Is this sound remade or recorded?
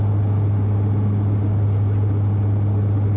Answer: recorded